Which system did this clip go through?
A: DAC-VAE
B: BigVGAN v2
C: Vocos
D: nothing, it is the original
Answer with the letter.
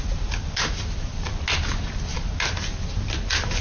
D